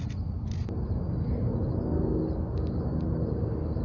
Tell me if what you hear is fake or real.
real